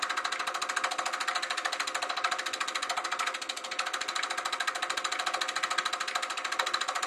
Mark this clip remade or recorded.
recorded